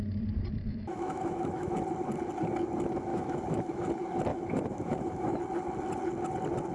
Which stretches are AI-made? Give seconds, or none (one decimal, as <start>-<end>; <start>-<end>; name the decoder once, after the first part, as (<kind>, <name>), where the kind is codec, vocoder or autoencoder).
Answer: 0.7-1.7 (autoencoder, DAC-VAE); 3.1-3.8; 4.3-5.4